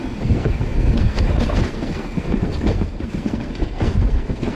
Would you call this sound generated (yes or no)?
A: yes